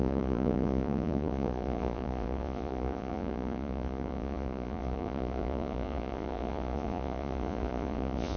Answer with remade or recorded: remade